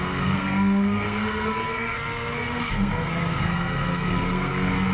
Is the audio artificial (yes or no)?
yes